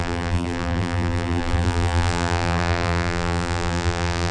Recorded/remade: remade